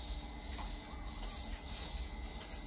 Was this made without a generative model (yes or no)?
yes